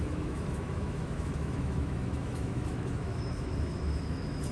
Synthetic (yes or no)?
yes